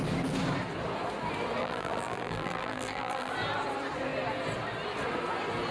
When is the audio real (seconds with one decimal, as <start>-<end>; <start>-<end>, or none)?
0.0-1.6; 3.3-5.7